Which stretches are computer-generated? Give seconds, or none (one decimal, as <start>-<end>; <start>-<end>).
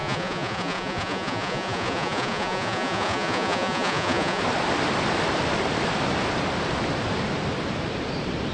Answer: 0.0-4.4